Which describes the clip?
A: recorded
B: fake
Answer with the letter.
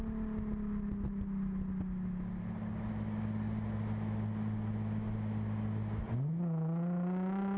A